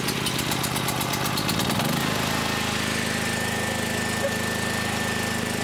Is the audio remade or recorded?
recorded